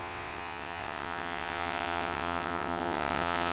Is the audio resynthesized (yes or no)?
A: yes